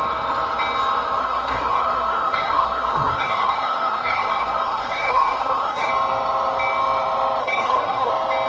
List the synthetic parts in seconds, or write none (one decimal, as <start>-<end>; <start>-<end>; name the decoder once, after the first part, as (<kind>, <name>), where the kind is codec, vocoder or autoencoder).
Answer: 1.2-5.9 (codec, SNAC); 7.4-8.1